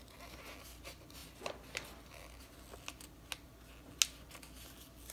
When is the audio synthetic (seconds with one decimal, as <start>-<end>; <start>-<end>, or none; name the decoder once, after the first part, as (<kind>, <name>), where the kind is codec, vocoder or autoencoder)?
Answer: none